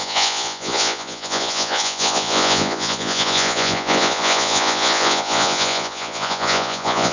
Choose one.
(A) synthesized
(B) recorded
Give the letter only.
A